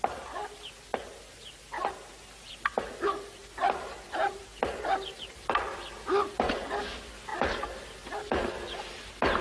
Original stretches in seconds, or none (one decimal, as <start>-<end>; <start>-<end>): 0.0-3.4; 4.3-9.4